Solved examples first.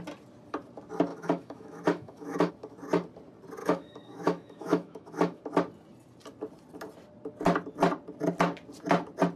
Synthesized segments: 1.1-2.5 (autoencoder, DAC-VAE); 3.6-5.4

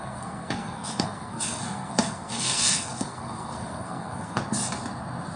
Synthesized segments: 0.0-4.4 (codec, SNAC)

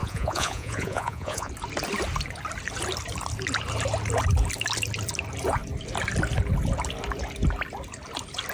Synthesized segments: 0.0-1.5 (vocoder, Vocos)

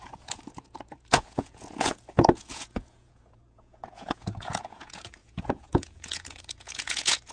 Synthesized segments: 0.0-7.3 (vocoder, Vocos)